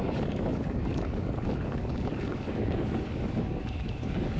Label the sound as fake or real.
fake